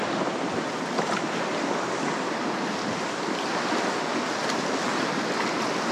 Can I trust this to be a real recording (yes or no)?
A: yes